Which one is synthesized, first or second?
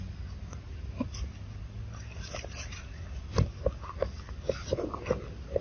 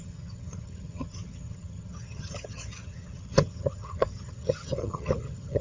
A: second